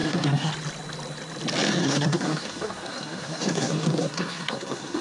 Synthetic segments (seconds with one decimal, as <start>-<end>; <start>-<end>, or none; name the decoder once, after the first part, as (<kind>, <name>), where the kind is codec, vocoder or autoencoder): 0.0-0.5 (codec, SNAC); 1.8-5.0